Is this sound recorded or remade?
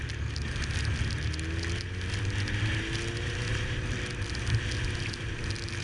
recorded